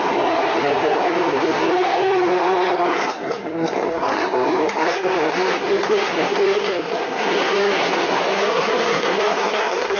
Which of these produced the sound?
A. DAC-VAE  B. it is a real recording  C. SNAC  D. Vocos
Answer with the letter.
C